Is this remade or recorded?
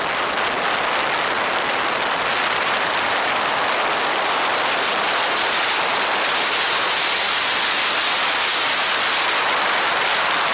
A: recorded